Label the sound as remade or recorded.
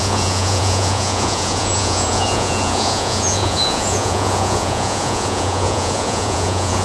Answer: remade